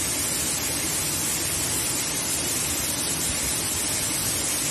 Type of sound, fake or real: real